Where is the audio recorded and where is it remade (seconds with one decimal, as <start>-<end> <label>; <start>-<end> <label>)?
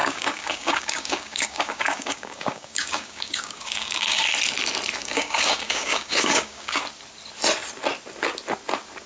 0.0-4.2 remade; 4.2-5.0 recorded; 5.0-6.8 remade; 6.8-9.1 recorded